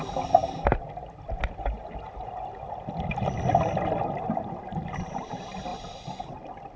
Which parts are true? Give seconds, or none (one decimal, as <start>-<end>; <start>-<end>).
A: 0.0-6.8

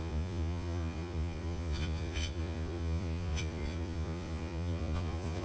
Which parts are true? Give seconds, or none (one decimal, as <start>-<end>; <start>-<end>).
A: none

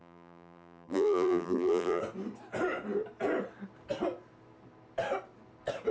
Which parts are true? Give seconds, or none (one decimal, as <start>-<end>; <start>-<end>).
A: 2.0-5.9

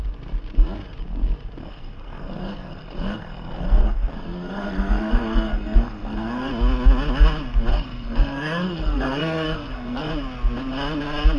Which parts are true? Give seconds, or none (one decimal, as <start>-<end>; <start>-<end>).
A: 0.0-1.6; 6.5-7.7; 10.1-11.4

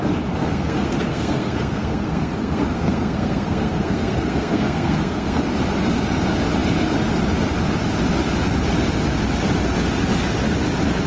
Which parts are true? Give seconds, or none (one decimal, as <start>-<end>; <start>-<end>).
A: 0.0-0.4; 5.4-11.1

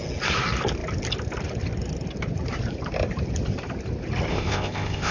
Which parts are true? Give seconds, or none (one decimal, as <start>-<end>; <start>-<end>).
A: 0.0-4.3

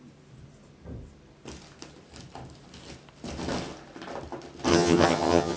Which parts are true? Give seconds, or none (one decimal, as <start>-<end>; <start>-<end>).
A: 0.0-4.7